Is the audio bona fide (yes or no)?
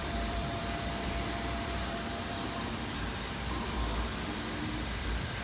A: no